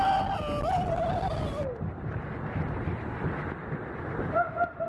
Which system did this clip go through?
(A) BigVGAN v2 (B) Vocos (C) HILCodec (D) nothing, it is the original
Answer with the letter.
D